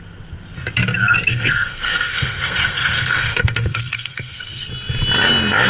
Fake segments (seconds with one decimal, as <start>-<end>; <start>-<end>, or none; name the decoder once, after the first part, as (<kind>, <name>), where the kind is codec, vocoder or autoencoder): 1.3-4.7 (codec, SNAC)